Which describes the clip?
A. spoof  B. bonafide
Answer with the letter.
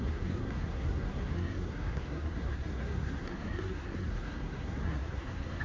A